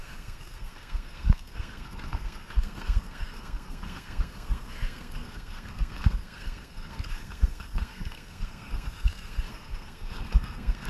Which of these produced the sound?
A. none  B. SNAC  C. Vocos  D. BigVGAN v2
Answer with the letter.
B